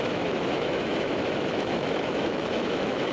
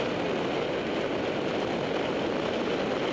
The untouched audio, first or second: second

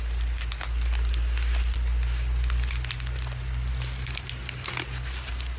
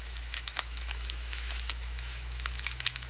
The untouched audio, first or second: first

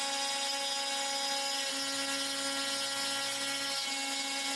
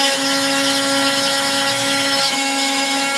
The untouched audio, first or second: first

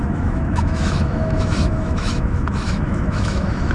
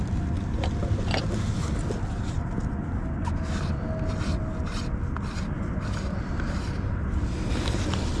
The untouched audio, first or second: second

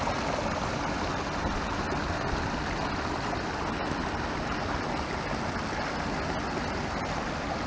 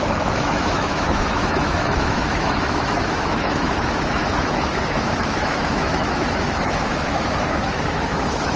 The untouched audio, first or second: first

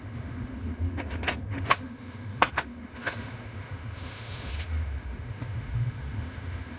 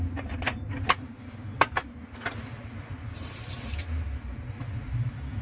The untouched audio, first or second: second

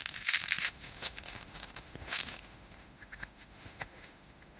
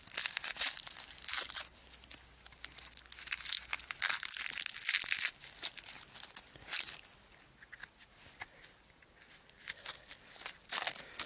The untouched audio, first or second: second